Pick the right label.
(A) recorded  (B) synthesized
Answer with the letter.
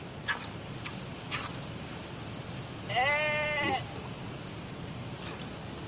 A